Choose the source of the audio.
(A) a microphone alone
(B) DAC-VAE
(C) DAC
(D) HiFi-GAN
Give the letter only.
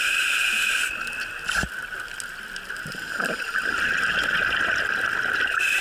A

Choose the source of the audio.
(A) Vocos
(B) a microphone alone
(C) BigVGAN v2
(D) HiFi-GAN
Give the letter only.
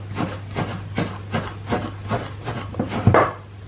B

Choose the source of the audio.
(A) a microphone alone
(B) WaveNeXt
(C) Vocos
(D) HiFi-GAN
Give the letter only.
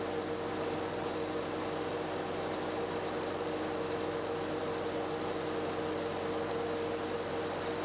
A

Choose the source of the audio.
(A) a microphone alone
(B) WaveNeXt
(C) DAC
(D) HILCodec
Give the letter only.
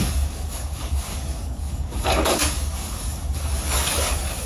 C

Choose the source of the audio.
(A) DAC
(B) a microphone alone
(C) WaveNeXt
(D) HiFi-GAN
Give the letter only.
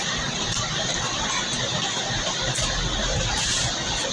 B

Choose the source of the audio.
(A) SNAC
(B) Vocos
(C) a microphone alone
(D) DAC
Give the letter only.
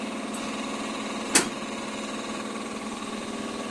C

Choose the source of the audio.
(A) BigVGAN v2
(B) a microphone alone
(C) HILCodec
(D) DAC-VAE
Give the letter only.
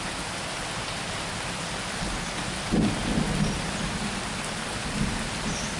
B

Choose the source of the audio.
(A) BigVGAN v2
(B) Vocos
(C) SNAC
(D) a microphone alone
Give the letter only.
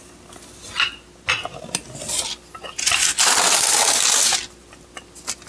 D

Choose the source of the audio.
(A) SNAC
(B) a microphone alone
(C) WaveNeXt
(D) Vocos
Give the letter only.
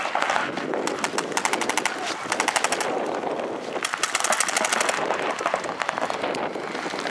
B